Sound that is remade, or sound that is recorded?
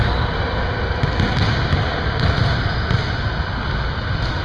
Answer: recorded